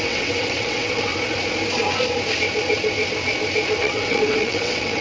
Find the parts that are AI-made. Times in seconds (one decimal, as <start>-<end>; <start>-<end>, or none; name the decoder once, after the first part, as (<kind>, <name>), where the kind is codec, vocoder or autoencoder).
0.0-1.1 (vocoder, WaveNeXt); 3.8-5.0